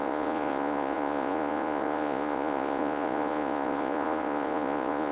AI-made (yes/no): yes